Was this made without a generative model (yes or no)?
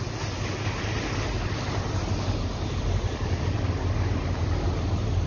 yes